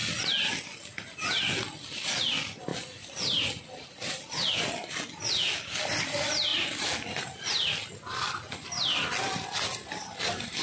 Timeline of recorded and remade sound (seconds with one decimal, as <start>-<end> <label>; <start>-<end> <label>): 0.0-10.6 recorded